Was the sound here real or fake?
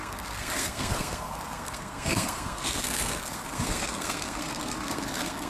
fake